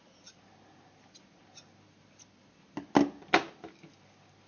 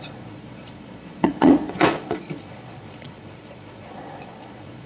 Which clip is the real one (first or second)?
first